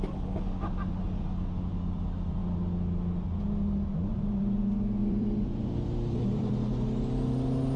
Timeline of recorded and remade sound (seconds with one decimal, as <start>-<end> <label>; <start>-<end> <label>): 0.0-5.0 recorded; 5.0-6.5 remade; 6.5-7.8 recorded